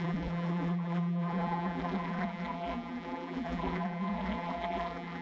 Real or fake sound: fake